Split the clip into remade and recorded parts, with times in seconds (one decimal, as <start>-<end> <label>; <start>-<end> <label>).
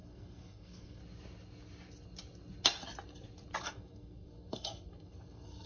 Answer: 0.0-1.0 remade; 1.0-3.6 recorded; 3.6-5.7 remade